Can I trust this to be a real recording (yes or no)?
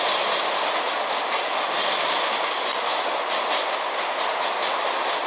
yes